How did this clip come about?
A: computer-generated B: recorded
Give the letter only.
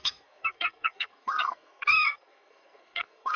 A